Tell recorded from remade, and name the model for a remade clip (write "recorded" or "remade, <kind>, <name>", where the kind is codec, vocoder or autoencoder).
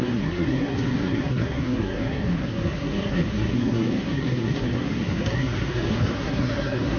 remade, codec, SNAC